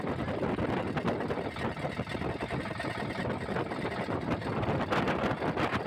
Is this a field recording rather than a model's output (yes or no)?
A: yes